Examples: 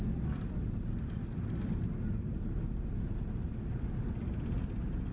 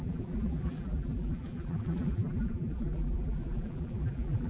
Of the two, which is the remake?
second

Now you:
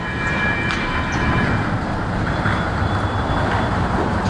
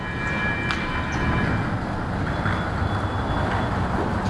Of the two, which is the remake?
first